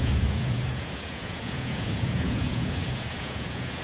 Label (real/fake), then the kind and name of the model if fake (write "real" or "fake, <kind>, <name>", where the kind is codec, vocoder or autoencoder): fake, vocoder, Vocos